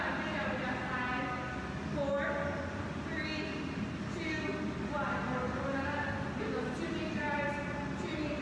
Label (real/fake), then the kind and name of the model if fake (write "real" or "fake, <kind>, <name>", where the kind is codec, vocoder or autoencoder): real